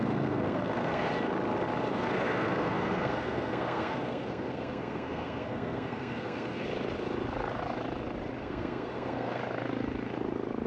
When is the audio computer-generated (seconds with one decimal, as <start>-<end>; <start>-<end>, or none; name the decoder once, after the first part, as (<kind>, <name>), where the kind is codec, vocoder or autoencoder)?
0.0-1.1 (codec, SNAC); 1.9-6.6; 8.4-9.4